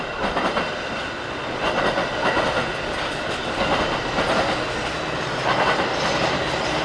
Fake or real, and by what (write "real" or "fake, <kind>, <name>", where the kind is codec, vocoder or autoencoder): real